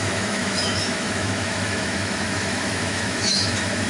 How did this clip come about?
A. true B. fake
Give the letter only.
B